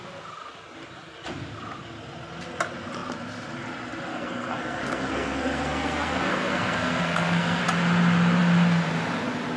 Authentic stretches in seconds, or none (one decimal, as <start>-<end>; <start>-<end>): 0.0-4.1; 7.6-9.6